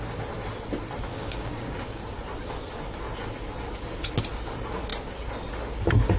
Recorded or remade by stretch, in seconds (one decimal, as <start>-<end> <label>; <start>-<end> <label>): 0.0-1.1 recorded; 1.1-2.0 remade; 2.0-6.2 recorded